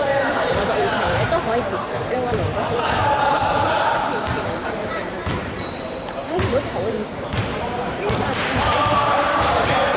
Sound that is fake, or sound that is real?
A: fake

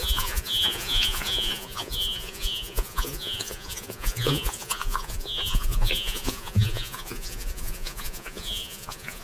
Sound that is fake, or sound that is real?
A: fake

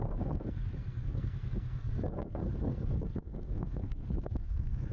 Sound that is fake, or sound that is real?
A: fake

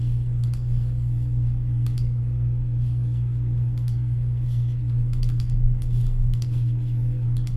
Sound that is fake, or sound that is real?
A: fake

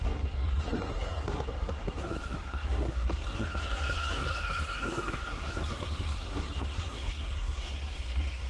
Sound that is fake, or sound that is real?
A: fake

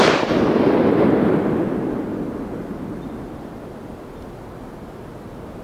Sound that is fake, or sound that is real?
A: real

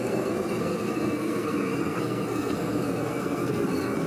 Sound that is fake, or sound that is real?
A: fake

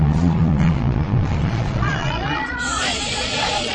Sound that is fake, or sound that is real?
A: fake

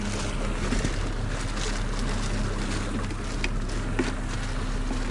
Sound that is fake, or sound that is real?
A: real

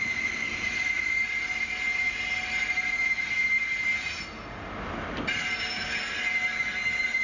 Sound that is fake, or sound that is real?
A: real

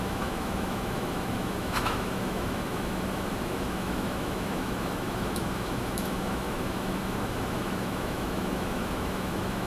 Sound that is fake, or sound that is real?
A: fake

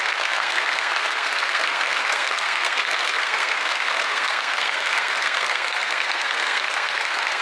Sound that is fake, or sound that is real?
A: fake